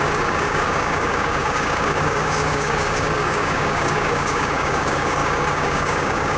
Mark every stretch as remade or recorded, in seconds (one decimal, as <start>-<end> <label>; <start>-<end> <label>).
0.0-6.4 remade